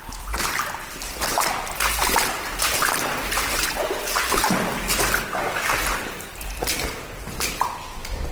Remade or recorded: remade